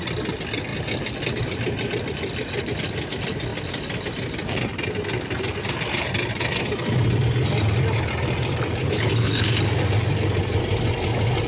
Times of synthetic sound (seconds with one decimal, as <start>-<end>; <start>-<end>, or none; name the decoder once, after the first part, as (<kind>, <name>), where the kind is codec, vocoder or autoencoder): 8.8-9.6 (codec, HILCodec)